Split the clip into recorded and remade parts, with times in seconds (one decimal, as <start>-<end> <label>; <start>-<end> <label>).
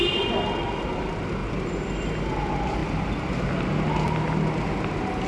0.0-1.4 recorded; 1.4-2.0 remade; 2.0-5.3 recorded